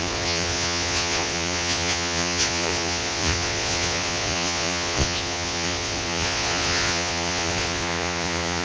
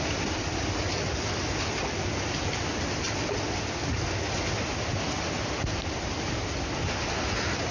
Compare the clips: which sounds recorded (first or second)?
second